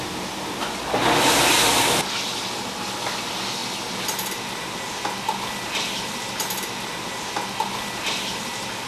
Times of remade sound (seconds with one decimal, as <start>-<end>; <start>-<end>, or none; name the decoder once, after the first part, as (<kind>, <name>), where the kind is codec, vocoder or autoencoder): none